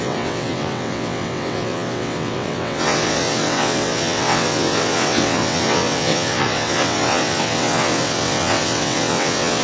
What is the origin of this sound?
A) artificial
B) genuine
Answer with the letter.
A